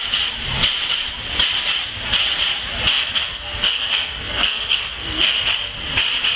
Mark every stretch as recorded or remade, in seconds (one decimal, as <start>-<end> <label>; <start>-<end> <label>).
0.0-2.9 recorded; 2.9-5.3 remade; 5.3-6.4 recorded